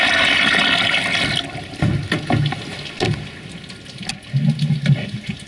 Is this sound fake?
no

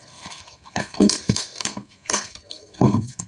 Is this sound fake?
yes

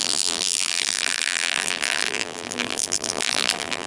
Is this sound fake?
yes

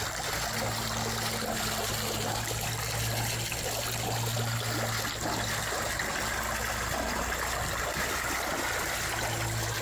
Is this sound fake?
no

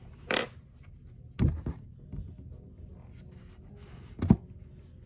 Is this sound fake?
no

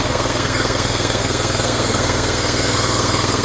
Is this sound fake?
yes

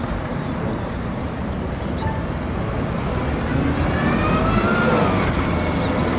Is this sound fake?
no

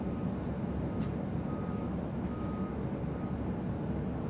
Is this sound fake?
no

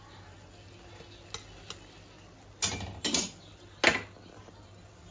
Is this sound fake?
no